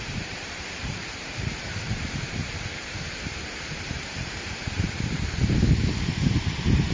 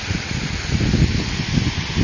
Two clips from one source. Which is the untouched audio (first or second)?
second